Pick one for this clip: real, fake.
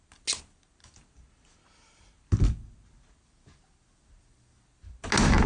real